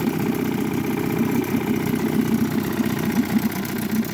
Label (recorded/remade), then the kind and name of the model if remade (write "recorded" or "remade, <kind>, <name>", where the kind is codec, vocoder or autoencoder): recorded